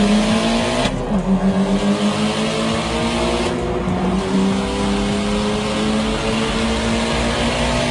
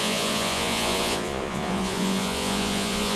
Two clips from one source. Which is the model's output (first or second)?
second